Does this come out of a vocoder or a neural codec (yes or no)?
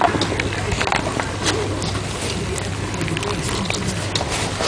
no